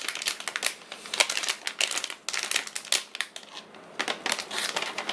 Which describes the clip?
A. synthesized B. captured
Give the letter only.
B